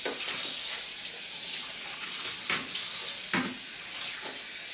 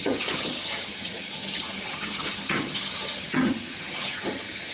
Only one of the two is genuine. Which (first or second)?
first